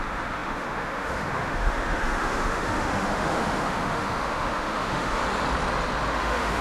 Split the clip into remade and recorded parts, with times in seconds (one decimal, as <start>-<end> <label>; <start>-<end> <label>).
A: 0.0-5.2 remade; 5.2-6.1 recorded; 6.1-6.6 remade